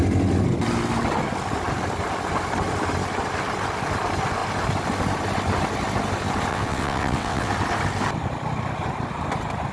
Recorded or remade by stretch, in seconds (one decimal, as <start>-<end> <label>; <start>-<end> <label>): 0.0-6.5 recorded; 6.5-7.5 remade; 7.5-9.7 recorded